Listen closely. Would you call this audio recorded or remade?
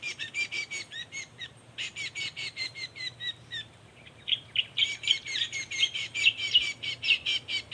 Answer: remade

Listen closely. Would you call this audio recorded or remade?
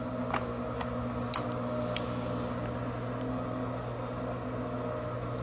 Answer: recorded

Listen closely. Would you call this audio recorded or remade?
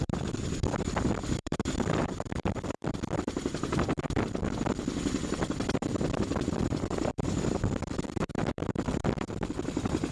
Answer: remade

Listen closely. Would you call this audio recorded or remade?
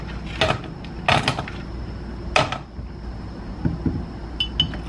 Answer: recorded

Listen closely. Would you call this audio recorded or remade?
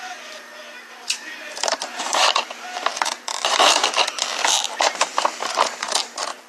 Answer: remade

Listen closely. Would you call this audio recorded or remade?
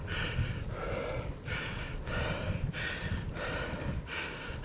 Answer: recorded